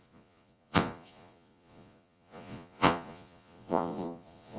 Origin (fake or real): fake